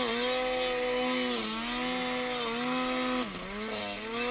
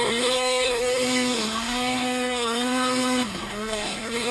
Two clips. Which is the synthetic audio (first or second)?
second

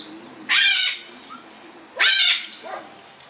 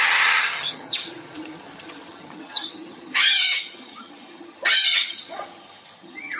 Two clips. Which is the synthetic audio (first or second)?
second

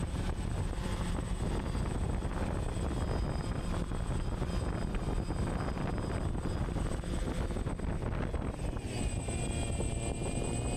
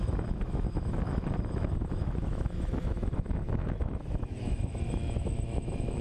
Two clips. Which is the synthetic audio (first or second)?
second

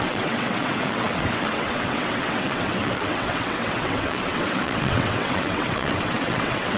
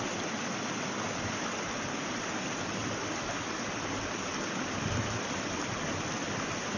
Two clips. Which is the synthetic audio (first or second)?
first